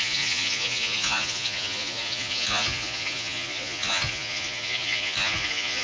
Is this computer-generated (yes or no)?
yes